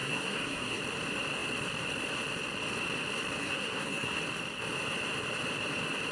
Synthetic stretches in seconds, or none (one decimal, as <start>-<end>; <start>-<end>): 0.0-0.8; 3.4-4.2